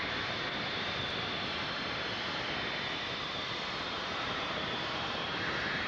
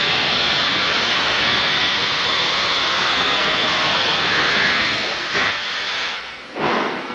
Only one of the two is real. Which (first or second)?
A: first